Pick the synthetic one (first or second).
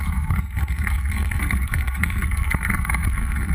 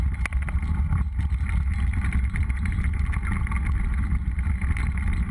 first